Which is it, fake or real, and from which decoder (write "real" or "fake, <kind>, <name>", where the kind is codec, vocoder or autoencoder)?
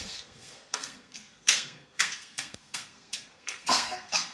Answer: fake, codec, SNAC